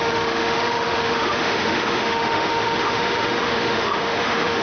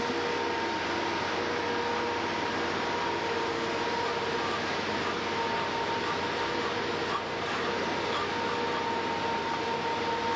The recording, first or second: second